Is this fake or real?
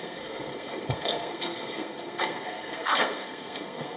fake